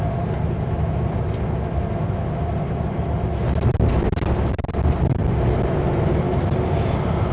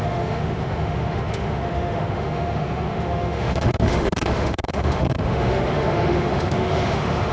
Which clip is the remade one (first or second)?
second